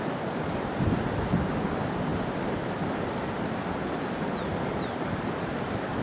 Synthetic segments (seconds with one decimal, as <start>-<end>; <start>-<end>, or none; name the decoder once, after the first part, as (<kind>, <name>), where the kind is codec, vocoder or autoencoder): none